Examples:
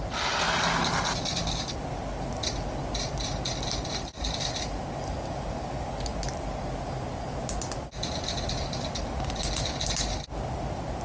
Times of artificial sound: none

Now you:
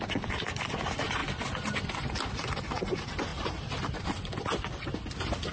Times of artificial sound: none